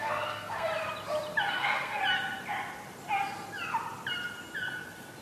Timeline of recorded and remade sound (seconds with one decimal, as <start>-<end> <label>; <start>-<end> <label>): 0.0-0.7 remade; 0.7-1.5 recorded; 1.5-2.0 remade; 2.0-5.2 recorded